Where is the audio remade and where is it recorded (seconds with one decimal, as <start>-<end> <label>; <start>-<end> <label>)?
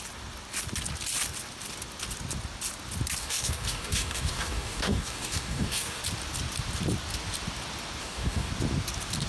0.0-3.2 recorded; 3.2-6.0 remade; 6.0-8.0 recorded; 8.0-8.5 remade; 8.5-9.3 recorded